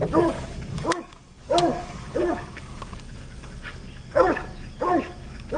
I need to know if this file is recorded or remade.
remade